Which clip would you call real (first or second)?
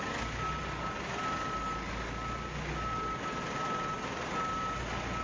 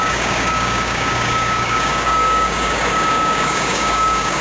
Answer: first